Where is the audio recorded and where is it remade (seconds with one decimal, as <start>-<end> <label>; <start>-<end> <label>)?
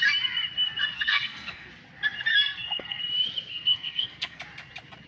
0.0-0.8 recorded; 0.8-1.7 remade; 1.7-2.3 recorded; 2.3-3.0 remade; 3.0-3.5 recorded; 3.5-4.4 remade; 4.4-5.1 recorded